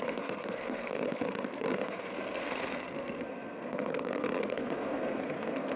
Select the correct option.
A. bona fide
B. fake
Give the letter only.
B